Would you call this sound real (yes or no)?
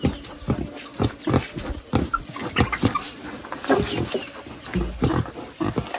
yes